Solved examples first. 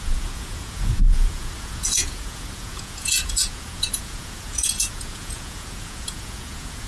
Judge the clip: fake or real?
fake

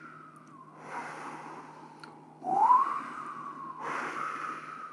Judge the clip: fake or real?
real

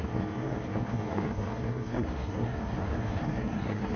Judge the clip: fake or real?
fake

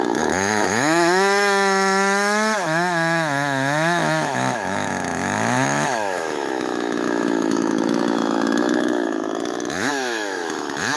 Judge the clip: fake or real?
fake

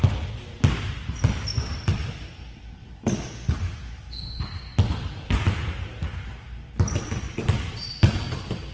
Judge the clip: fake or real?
real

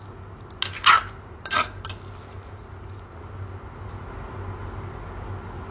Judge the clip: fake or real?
real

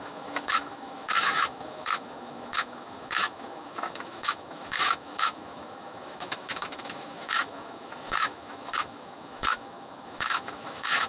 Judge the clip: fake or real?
fake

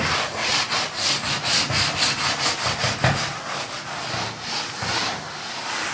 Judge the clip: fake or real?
real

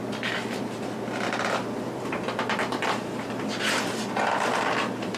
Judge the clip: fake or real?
fake